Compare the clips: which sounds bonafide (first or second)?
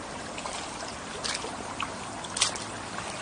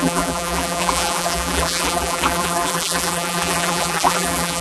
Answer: first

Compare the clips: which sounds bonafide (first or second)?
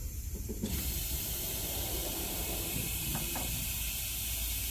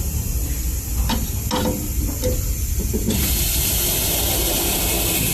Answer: second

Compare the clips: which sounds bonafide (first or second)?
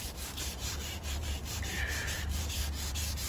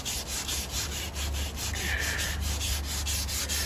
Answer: second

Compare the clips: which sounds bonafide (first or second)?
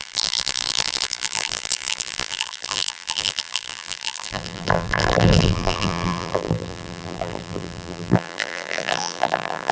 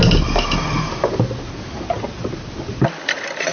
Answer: second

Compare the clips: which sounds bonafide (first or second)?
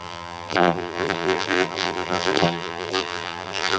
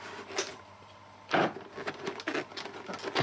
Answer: second